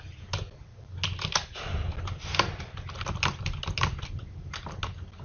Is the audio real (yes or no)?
yes